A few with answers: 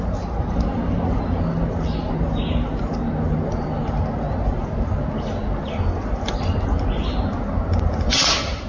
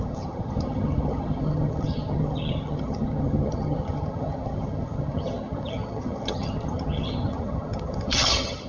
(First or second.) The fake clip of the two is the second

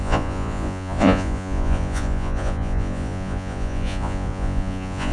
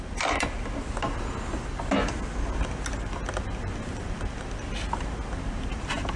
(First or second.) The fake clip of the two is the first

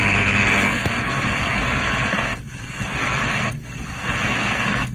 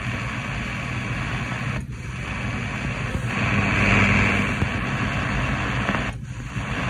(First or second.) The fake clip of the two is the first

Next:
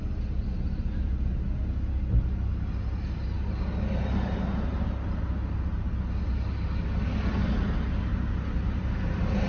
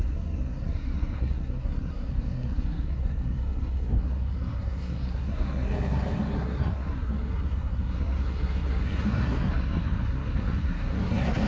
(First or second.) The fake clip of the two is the second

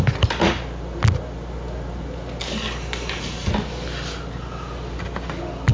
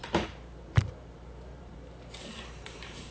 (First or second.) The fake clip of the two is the second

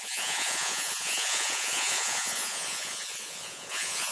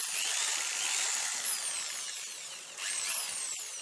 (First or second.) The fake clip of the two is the first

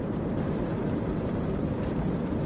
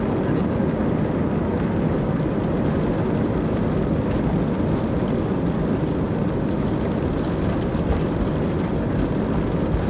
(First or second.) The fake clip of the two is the first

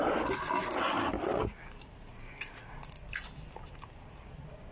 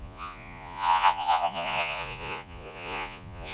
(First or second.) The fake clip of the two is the second